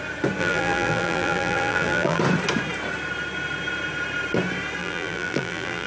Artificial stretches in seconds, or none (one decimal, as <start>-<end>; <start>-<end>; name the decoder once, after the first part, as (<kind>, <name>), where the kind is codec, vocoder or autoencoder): 0.4-2.2 (vocoder, BigVGAN v2); 4.8-5.9